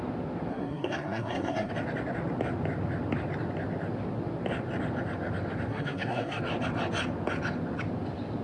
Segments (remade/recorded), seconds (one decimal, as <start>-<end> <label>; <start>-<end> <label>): 0.0-0.5 recorded; 0.5-1.7 remade; 1.7-5.7 recorded; 5.7-6.4 remade; 6.4-8.4 recorded